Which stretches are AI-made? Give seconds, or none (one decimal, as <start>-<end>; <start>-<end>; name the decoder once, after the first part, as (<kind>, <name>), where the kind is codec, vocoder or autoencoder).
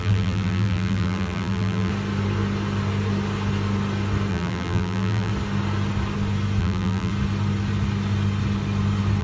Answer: 0.0-1.9 (vocoder, BigVGAN v2); 4.3-5.3; 6.6-7.1